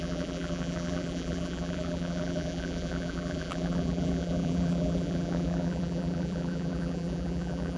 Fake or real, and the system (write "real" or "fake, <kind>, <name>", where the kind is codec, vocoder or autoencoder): fake, vocoder, BigVGAN v2